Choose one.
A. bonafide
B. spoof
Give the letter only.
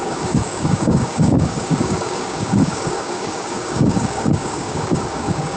B